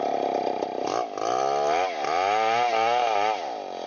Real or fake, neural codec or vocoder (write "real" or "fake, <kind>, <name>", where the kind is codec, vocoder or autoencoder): real